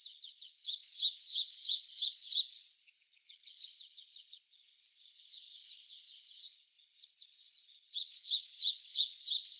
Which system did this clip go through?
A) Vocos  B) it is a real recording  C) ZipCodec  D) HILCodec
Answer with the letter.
D